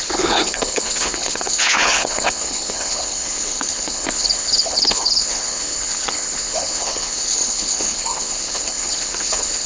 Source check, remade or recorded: remade